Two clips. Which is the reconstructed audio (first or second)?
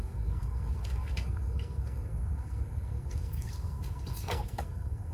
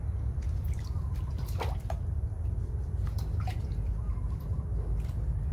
first